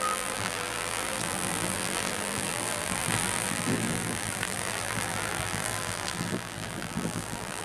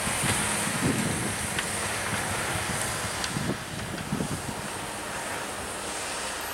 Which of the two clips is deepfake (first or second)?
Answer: first